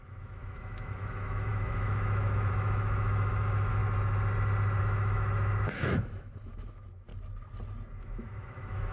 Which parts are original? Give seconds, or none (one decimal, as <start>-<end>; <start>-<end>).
3.8-4.8; 7.1-8.0